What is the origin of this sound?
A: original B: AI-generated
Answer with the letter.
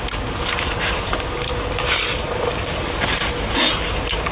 A